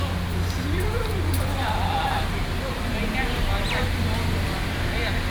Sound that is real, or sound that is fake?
real